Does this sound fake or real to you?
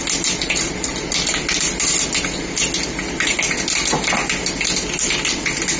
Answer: real